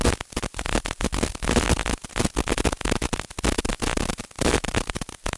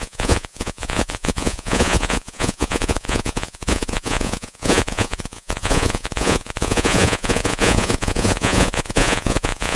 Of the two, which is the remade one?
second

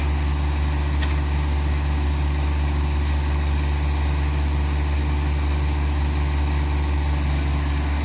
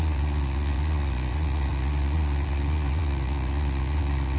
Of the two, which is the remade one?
second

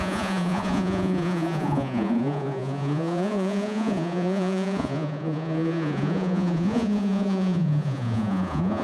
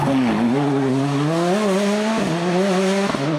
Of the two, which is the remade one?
first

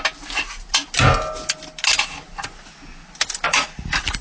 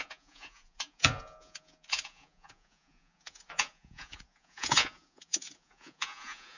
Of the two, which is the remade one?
second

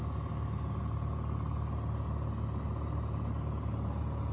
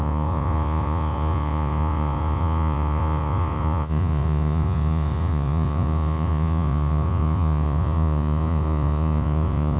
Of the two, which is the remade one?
second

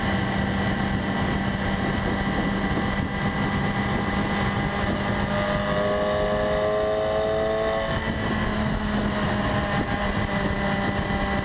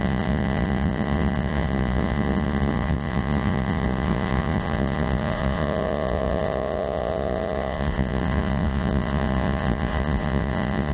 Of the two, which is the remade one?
second